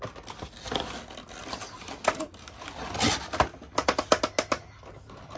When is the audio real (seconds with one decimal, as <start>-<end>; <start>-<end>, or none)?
0.0-5.4